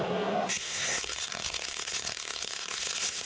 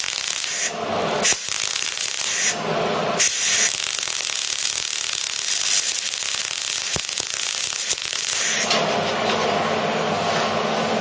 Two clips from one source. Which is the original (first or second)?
second